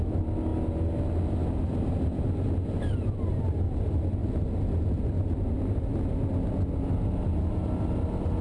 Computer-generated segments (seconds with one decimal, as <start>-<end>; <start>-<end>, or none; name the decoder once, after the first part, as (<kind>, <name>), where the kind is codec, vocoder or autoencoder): 4.2-5.5 (vocoder, BigVGAN v2)